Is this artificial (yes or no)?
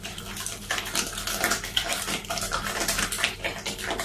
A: yes